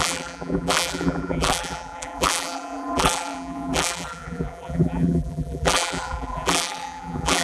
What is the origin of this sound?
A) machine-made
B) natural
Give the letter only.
A